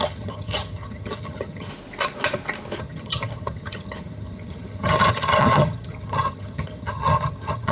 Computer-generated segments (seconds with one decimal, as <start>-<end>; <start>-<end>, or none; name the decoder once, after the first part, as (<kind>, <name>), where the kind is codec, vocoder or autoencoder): 0.0-1.7 (vocoder, HiFi-GAN); 2.8-7.7